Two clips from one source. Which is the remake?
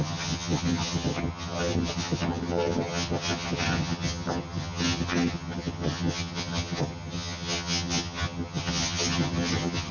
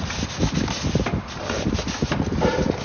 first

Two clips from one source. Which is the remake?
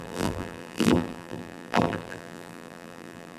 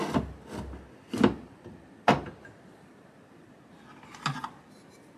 first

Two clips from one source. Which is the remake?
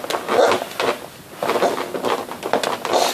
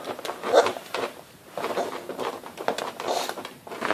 second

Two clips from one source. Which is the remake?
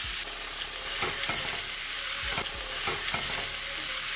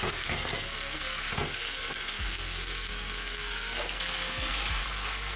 second